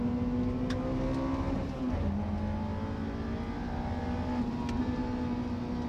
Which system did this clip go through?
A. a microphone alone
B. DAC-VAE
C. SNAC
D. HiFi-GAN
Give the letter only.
A